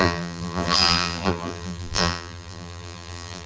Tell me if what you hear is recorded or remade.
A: remade